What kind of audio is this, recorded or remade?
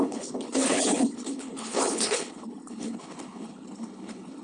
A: remade